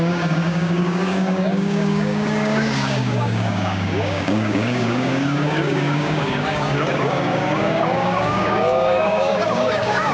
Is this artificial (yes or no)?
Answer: yes